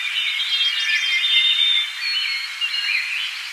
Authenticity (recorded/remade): recorded